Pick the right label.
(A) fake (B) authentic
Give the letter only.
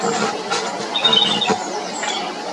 B